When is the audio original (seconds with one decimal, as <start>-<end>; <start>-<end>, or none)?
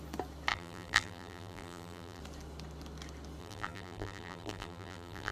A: 0.0-0.5; 2.2-3.4